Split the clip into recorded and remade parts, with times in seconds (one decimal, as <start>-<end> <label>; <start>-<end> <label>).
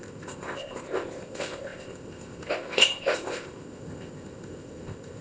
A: 0.0-5.2 remade